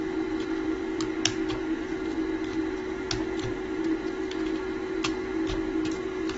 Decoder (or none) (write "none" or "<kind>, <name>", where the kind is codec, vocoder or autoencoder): none